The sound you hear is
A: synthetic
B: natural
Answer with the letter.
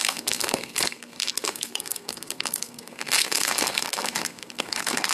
A